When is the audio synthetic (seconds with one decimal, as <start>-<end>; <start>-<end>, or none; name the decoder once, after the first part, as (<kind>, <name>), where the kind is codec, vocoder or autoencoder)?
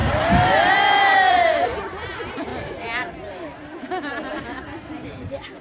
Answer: 0.0-2.5 (vocoder, BigVGAN v2); 3.8-5.6